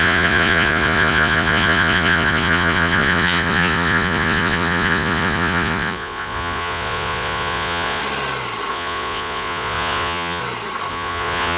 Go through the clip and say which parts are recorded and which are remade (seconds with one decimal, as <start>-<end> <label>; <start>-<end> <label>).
0.0-8.0 remade; 8.0-8.7 recorded; 8.7-10.4 remade; 10.4-10.9 recorded; 10.9-11.6 remade